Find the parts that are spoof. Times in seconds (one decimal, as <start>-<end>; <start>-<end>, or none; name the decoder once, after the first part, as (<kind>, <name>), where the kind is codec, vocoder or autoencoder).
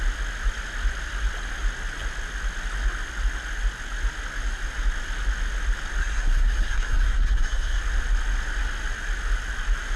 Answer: 6.0-7.8 (codec, SNAC)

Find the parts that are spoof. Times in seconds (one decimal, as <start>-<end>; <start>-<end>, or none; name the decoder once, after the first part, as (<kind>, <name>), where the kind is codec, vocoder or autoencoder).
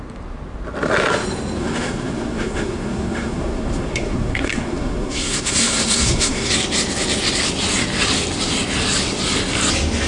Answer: 1.6-6.5 (codec, SNAC)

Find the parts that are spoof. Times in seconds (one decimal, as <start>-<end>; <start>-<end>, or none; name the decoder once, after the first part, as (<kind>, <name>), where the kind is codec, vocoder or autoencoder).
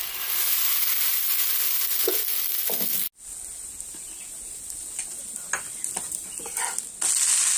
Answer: none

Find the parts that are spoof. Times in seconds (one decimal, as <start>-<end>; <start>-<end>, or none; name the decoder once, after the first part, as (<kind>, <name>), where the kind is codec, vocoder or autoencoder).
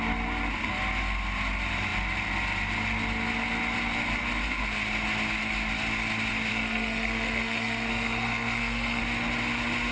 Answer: 6.5-9.0 (codec, SNAC)